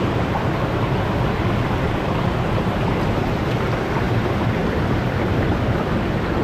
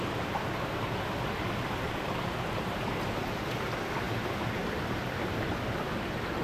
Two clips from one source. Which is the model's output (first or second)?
first